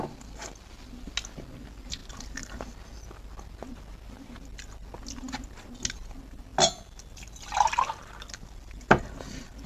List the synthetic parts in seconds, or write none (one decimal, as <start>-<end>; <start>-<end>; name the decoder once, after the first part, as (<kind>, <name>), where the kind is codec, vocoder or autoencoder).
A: none